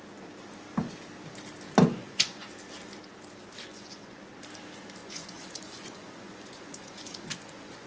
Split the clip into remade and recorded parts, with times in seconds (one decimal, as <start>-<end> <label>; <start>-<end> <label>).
0.0-1.9 recorded; 1.9-2.5 remade; 2.5-3.7 recorded; 3.7-4.2 remade; 4.2-5.0 recorded; 5.0-7.9 remade